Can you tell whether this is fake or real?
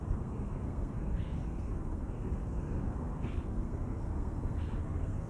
fake